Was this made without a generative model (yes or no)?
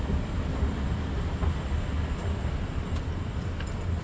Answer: yes